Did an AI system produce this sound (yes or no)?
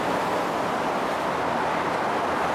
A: no